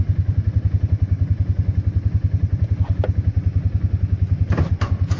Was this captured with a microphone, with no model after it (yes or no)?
yes